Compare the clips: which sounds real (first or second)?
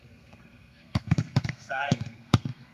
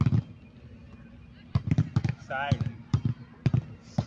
second